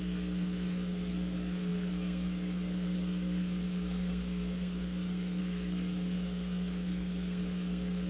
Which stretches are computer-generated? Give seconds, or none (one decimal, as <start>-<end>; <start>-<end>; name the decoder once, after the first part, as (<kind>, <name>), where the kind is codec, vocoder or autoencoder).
0.0-8.1 (codec, SNAC)